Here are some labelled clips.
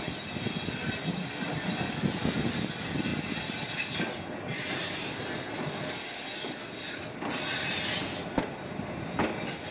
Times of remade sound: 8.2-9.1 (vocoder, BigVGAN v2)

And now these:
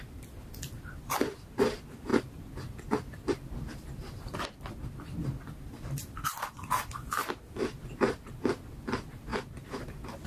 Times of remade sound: 0.0-10.3 (vocoder, BigVGAN v2)

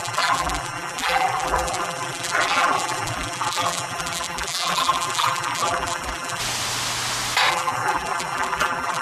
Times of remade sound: 0.0-6.4 (vocoder, BigVGAN v2); 7.5-9.0